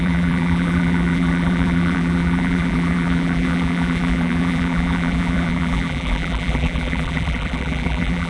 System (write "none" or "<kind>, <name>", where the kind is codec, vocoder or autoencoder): vocoder, BigVGAN v2